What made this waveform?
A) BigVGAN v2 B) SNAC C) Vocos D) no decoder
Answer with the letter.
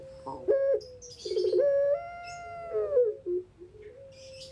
D